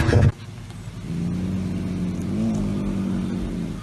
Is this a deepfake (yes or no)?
no